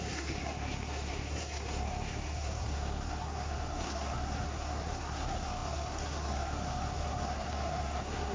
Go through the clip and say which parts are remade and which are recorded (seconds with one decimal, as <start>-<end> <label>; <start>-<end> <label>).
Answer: 0.0-8.3 remade